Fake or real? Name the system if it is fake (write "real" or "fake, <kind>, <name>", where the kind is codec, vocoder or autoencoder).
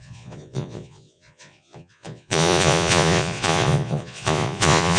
fake, vocoder, Vocos